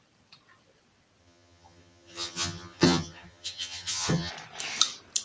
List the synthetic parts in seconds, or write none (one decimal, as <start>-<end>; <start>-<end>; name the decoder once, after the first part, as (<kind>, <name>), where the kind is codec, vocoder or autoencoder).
1.2-4.3 (vocoder, HiFi-GAN)